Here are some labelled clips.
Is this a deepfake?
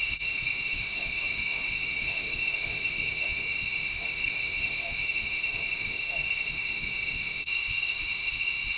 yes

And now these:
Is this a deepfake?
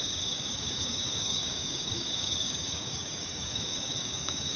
yes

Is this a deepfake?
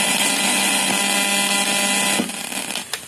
no